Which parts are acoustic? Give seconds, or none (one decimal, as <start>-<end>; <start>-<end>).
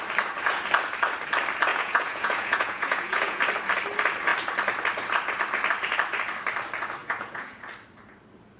0.0-1.7; 3.4-7.0; 7.6-8.6